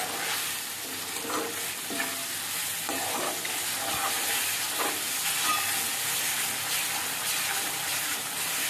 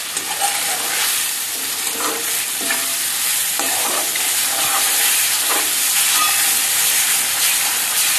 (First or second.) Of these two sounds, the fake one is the second